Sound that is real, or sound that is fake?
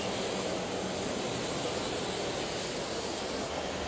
real